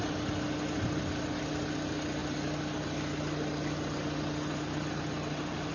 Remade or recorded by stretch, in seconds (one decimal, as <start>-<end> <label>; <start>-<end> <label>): 0.0-5.7 recorded